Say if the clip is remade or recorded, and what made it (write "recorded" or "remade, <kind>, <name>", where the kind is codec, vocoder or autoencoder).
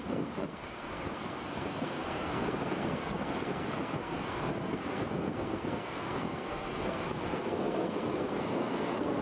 remade, codec, SNAC